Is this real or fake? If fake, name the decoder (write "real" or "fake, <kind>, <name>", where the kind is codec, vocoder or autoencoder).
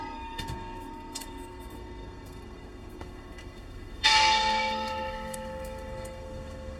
fake, codec, SNAC